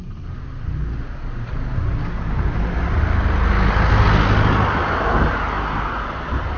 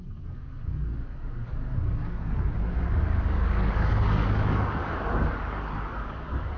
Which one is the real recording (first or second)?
first